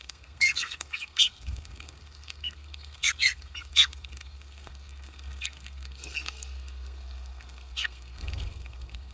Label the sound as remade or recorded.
remade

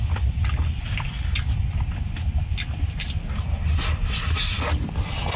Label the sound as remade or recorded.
recorded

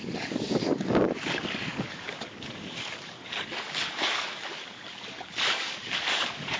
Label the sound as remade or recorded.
remade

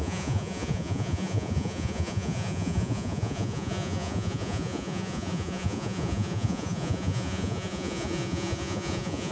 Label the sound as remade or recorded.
remade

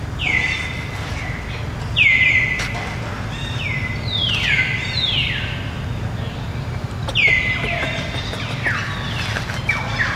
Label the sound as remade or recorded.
recorded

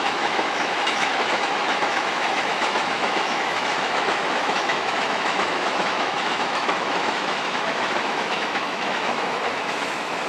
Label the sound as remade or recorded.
remade